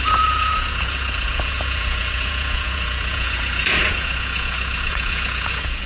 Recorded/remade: remade